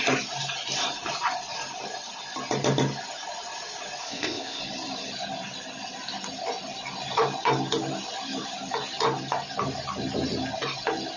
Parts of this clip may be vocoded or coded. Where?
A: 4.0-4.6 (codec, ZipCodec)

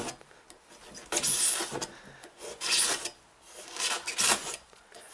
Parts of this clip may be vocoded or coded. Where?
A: 2.2-2.8 (vocoder, Vocos); 4.4-5.1

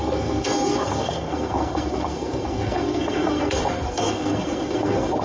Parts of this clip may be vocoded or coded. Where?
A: 0.0-5.2 (codec, SNAC)

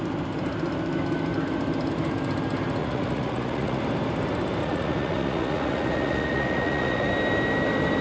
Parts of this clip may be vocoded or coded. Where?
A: 2.8-3.8 (vocoder, Vocos); 4.6-7.1

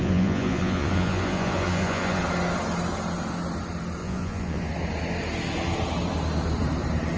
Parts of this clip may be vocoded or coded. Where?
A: 0.0-2.2 (vocoder, Vocos); 4.0-4.7

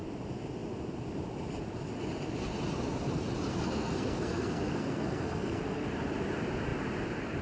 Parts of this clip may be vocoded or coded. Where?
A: 3.5-5.9 (codec, SNAC)

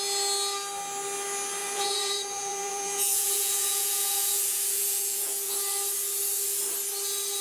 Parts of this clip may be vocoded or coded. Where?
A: 1.6-5.5 (vocoder, Vocos)

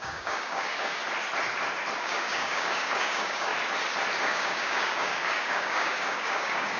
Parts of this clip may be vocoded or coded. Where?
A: 0.0-1.0 (codec, DAC); 2.0-3.5; 4.2-6.8